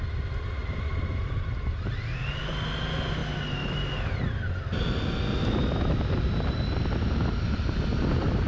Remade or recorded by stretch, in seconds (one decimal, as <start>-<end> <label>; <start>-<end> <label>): 0.0-8.5 recorded